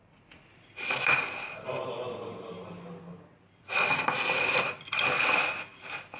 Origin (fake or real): real